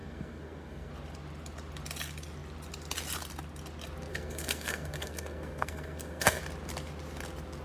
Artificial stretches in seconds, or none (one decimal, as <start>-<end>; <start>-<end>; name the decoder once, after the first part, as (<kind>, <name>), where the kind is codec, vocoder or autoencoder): 0.0-0.9 (codec, SNAC); 4.1-6.4